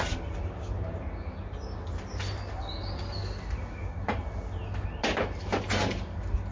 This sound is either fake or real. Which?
real